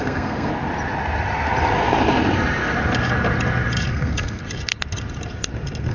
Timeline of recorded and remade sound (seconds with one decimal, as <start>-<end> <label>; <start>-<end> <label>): 0.0-0.5 remade; 0.5-3.9 recorded; 3.9-4.4 remade; 4.4-5.9 recorded